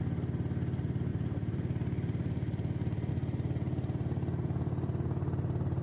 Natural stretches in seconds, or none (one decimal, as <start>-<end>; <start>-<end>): 0.0-1.1; 3.1-5.8